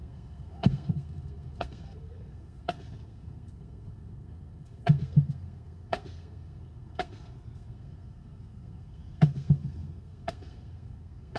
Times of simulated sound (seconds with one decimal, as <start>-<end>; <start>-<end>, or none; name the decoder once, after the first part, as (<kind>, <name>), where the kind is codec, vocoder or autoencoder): 0.0-11.4 (codec, SNAC)